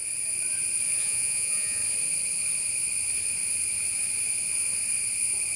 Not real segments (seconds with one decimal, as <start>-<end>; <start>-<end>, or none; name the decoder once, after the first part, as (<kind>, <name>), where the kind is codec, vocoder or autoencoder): 1.0-1.8 (vocoder, Vocos)